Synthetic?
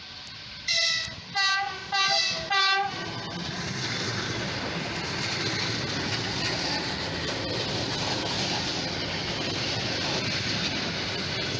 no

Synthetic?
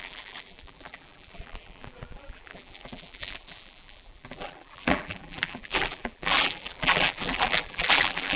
yes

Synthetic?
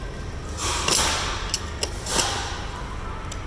no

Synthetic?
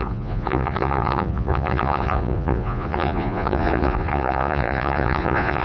yes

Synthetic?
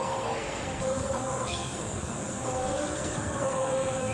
yes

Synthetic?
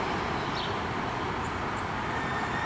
no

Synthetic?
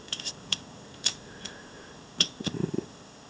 yes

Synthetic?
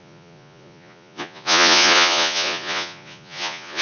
yes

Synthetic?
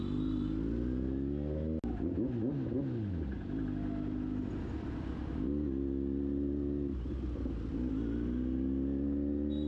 no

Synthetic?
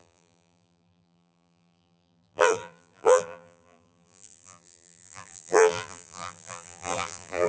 yes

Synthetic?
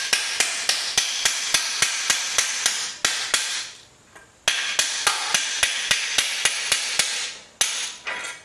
no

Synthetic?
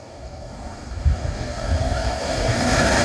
yes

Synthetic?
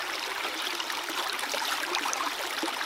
yes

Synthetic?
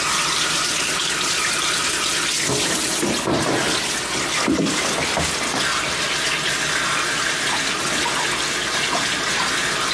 no